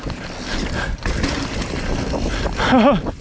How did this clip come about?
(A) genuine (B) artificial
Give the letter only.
A